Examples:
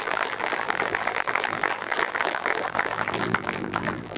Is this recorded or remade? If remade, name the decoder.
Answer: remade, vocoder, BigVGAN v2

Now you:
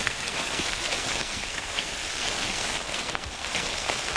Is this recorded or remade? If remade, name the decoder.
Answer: remade, codec, SNAC